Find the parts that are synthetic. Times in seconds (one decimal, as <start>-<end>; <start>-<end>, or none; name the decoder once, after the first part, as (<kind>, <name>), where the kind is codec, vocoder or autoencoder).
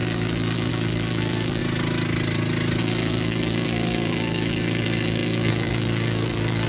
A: 0.0-1.6 (vocoder, BigVGAN v2); 2.8-6.7